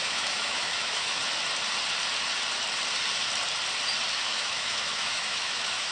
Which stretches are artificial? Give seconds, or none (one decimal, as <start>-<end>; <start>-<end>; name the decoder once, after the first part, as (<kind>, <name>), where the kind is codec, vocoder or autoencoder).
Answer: 0.0-1.2 (autoencoder, DAC-VAE); 4.1-5.9